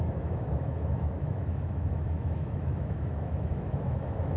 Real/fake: fake